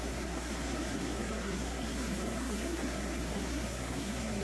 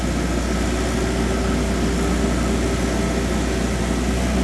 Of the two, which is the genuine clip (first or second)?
second